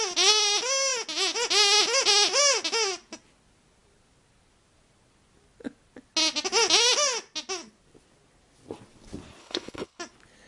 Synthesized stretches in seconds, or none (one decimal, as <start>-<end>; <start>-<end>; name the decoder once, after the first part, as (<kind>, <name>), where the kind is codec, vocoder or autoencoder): 9.4-10.0 (codec, HILCodec)